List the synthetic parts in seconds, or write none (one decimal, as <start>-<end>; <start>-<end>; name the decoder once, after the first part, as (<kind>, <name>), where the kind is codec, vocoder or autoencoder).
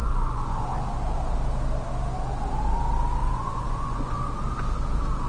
0.0-0.6 (vocoder, Vocos); 3.2-4.2